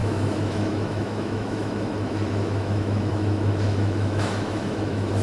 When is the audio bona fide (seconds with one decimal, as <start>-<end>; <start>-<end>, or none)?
none